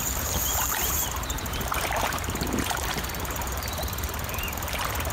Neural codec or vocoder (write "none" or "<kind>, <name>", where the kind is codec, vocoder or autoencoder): vocoder, BigVGAN v2